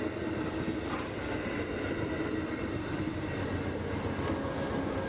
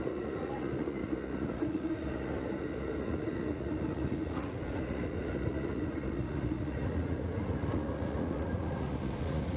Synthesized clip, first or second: second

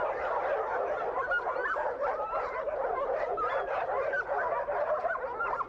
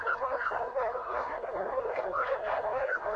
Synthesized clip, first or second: second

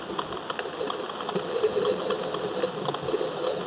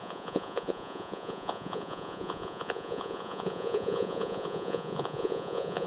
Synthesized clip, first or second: second